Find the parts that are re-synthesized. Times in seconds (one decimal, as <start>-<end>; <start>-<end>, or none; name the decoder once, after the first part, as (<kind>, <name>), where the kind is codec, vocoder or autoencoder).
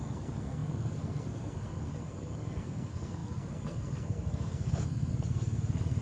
0.0-6.0 (codec, SNAC)